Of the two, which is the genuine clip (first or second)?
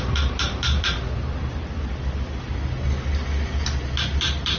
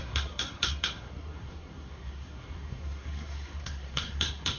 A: first